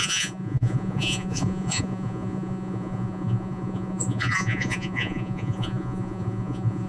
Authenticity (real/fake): fake